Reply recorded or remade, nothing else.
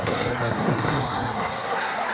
remade